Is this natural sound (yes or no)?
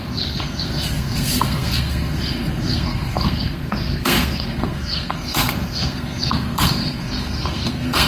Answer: no